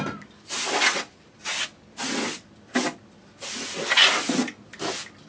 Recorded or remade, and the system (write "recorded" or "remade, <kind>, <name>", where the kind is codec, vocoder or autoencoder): recorded